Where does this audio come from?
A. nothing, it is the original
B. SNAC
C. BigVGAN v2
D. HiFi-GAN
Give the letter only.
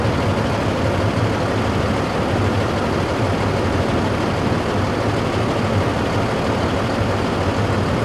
A